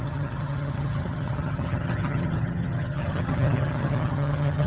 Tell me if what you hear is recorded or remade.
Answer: remade